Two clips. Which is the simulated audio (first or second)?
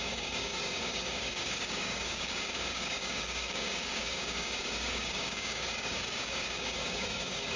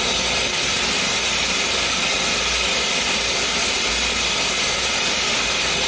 first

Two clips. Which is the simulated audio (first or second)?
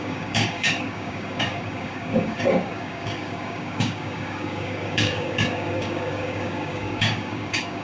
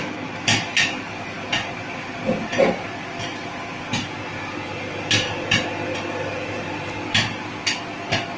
first